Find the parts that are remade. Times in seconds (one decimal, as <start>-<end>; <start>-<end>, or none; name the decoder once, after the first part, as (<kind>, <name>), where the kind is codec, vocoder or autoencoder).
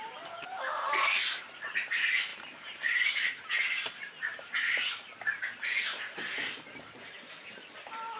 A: none